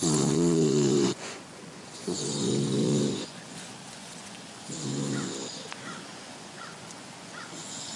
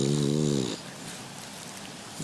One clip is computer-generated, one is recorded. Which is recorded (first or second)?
second